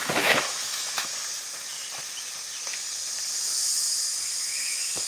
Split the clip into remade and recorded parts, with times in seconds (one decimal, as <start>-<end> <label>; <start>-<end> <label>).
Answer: 0.0-1.1 remade; 1.1-4.2 recorded; 4.2-5.1 remade